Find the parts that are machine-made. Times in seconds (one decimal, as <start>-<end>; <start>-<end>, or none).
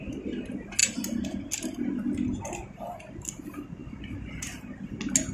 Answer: none